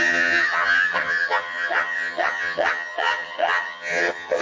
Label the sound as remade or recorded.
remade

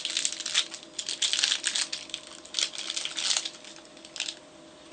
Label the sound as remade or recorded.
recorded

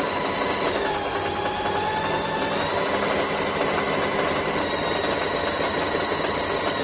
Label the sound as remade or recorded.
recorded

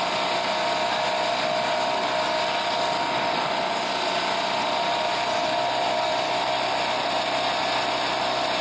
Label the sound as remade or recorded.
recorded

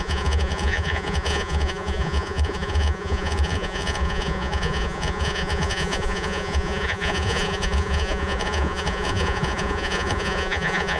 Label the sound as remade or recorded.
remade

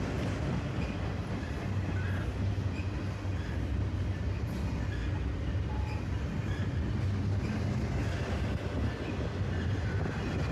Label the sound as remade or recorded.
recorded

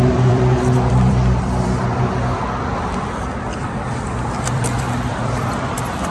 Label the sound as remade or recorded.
remade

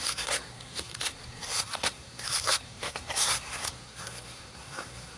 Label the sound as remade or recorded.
remade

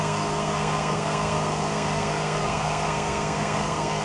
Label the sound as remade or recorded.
remade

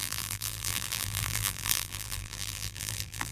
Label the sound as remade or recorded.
remade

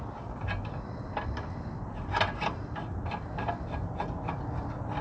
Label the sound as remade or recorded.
recorded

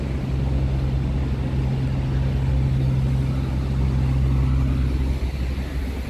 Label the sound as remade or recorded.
recorded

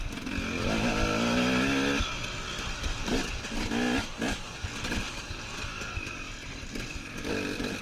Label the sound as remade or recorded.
recorded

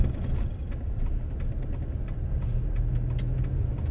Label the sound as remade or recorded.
recorded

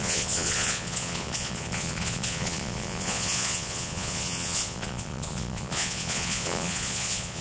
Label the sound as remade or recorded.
remade